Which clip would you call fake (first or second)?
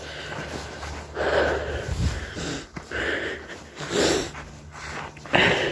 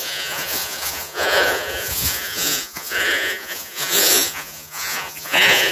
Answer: second